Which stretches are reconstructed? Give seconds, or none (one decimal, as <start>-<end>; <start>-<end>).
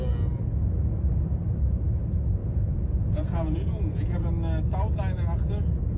2.4-4.2